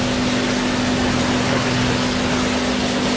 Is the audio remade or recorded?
recorded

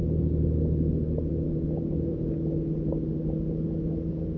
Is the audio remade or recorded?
recorded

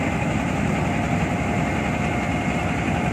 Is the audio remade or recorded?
recorded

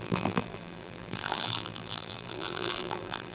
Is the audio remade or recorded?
remade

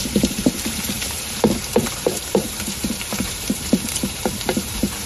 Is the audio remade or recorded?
remade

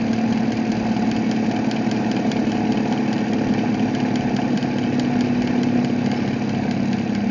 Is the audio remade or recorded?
recorded